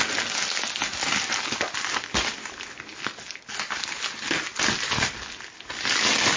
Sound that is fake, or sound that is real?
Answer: real